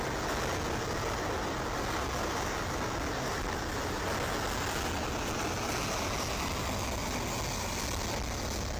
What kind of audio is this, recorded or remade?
recorded